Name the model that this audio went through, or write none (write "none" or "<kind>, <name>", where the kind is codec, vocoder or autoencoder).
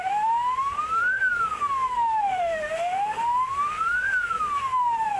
autoencoder, DAC-VAE